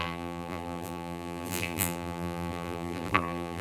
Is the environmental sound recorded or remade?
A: remade